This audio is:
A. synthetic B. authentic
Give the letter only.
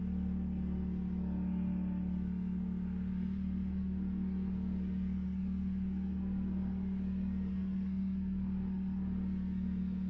A